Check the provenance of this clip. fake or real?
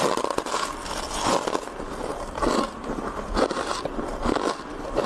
real